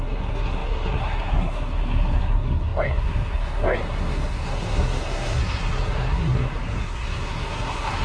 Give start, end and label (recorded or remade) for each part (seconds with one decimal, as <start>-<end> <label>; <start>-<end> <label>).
0.0-8.0 remade